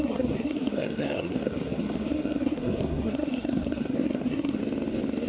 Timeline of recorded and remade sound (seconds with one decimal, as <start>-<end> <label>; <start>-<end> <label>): 0.0-4.6 remade; 4.6-5.3 recorded